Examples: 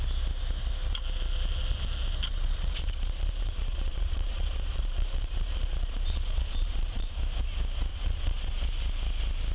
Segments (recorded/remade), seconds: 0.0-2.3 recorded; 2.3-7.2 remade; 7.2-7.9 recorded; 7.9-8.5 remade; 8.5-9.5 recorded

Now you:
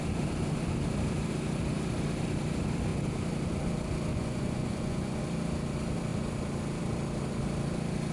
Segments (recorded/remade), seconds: 0.0-4.1 recorded; 4.1-5.2 remade; 5.2-8.1 recorded

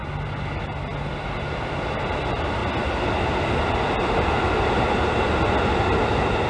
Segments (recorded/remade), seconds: 0.0-6.5 recorded

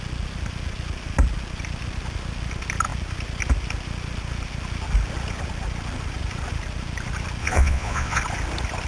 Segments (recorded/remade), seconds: 0.0-7.4 recorded; 7.4-8.2 remade; 8.2-8.9 recorded

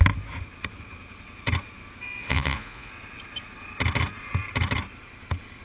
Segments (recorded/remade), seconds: 0.0-2.2 recorded; 2.2-2.9 remade; 2.9-5.6 recorded

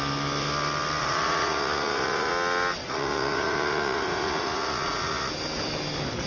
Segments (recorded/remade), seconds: 0.0-1.0 recorded; 1.0-2.3 remade; 2.3-2.8 recorded; 2.8-5.3 remade; 5.3-6.3 recorded